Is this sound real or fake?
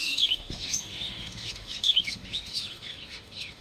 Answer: fake